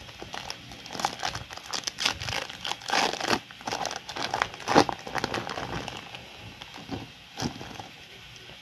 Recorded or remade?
recorded